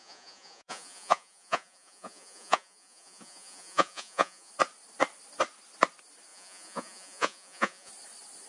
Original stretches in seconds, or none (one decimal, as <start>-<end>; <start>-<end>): 4.5-6.3; 7.9-8.5